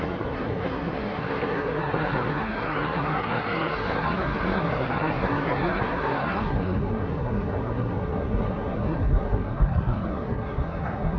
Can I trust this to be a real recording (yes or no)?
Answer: no